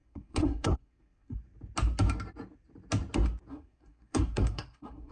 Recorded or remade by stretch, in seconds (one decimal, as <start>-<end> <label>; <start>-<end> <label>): 0.0-1.4 remade; 1.4-3.5 recorded; 3.5-5.1 remade